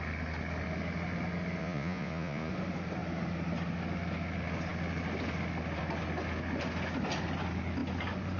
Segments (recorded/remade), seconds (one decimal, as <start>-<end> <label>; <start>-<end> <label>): 0.0-1.6 recorded; 1.6-2.5 remade; 2.5-8.4 recorded

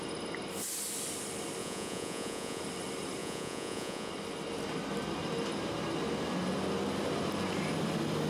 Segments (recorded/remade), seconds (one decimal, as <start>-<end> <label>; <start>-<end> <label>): 0.0-1.6 recorded; 1.6-2.6 remade; 2.6-3.2 recorded; 3.2-4.1 remade; 4.1-8.3 recorded

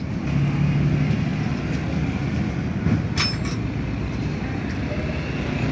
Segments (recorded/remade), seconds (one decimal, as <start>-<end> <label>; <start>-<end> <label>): 0.0-5.7 recorded

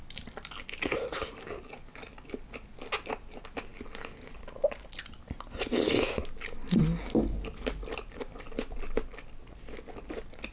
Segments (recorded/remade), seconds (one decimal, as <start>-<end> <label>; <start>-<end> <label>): 0.0-10.5 recorded

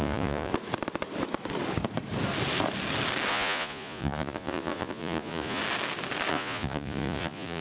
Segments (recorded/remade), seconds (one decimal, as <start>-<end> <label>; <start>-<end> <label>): 0.0-0.5 remade; 0.5-3.3 recorded; 3.3-5.6 remade; 5.6-6.3 recorded; 6.3-7.6 remade

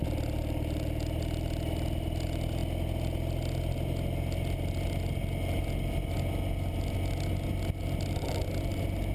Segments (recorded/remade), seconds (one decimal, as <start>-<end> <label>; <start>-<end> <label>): 0.0-9.1 recorded

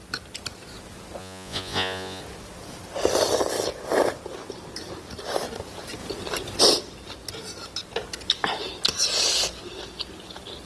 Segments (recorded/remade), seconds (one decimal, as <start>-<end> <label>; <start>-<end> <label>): 0.0-1.2 recorded; 1.2-2.2 remade; 2.2-10.7 recorded

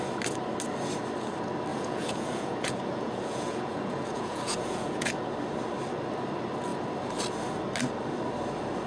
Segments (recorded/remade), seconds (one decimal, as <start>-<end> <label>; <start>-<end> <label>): 0.0-1.7 recorded; 1.7-5.1 remade; 5.1-8.9 recorded